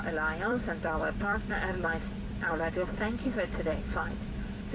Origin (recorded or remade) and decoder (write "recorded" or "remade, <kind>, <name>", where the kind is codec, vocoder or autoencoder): remade, vocoder, BigVGAN v2